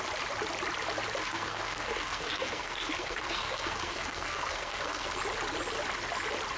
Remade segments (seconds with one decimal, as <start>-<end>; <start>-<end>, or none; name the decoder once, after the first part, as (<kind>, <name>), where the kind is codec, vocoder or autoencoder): 1.2-5.2 (codec, SNAC)